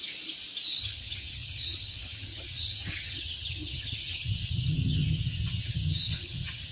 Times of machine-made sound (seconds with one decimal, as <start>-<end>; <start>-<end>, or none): 0.8-6.7